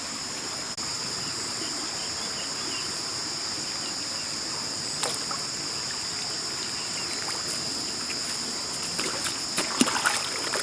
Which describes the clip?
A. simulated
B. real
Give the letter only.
B